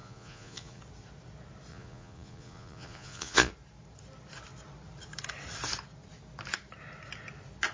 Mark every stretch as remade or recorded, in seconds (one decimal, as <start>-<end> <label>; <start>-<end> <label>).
0.0-0.8 remade; 0.8-1.7 recorded; 1.7-3.5 remade; 3.5-7.7 recorded